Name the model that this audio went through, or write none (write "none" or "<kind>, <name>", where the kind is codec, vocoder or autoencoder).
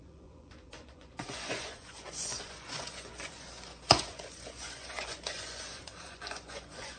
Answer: vocoder, Vocos